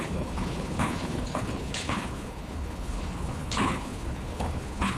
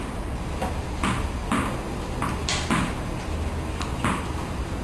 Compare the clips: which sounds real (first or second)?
second